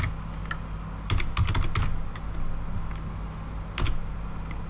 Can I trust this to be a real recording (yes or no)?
yes